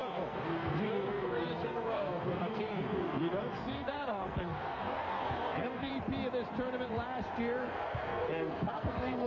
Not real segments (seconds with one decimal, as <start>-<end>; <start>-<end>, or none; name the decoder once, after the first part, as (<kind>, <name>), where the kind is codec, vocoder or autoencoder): 0.0-5.9 (codec, SNAC); 7.6-9.3